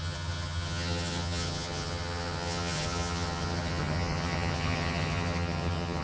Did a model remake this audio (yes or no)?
yes